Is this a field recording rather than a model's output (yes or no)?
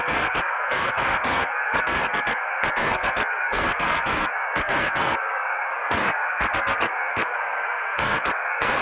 no